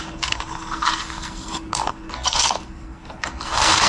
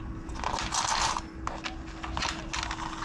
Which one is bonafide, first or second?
second